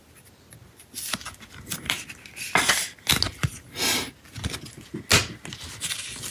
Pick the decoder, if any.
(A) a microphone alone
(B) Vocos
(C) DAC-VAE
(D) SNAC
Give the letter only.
A